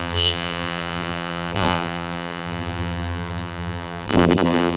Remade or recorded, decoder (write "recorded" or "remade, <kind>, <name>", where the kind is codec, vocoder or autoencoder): remade, vocoder, BigVGAN v2